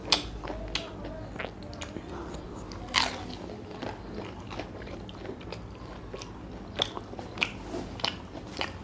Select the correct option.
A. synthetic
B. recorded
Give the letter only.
B